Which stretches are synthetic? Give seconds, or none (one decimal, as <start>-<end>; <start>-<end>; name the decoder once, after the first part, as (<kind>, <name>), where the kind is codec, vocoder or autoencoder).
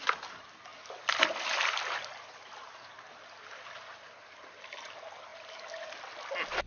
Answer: none